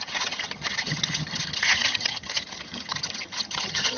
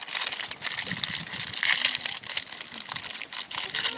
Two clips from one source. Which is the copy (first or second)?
first